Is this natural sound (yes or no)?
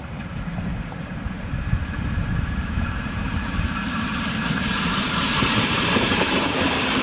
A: no